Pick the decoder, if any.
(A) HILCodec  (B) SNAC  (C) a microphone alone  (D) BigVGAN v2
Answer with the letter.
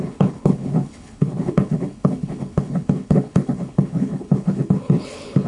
A